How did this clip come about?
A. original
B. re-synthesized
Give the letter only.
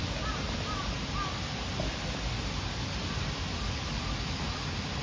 A